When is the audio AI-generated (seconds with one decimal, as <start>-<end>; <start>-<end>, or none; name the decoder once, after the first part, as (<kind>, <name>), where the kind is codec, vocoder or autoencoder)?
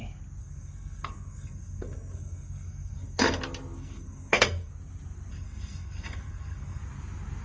0.4-3.4 (codec, SNAC); 3.8-4.7; 5.3-6.8